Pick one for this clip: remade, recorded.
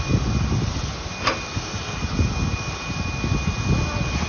recorded